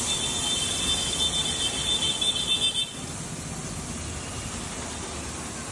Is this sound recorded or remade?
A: recorded